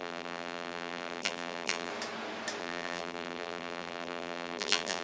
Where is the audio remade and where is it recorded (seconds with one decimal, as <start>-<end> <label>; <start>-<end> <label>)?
0.0-1.9 remade; 1.9-2.6 recorded; 2.6-5.0 remade